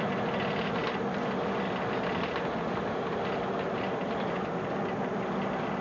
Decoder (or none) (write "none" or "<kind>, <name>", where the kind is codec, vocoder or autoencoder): none